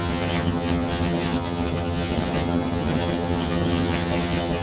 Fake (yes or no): yes